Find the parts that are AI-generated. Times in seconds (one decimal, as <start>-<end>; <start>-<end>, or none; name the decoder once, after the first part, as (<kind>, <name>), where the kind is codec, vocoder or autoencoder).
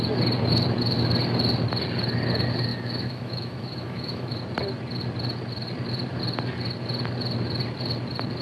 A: 2.7-4.4 (autoencoder, DAC-VAE)